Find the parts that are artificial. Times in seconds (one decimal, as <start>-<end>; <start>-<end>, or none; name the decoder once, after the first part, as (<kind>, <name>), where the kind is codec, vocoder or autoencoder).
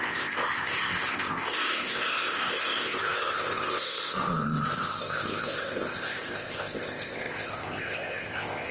0.0-8.7 (codec, ZipCodec)